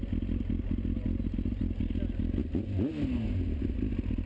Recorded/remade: recorded